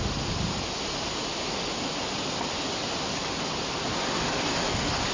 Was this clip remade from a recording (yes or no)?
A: no